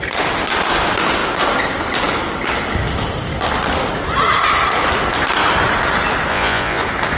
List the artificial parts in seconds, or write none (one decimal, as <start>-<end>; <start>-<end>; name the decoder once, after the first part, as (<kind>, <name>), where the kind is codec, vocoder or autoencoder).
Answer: 6.3-6.8 (vocoder, Vocos)